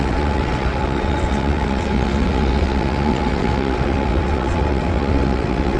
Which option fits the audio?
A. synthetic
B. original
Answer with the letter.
A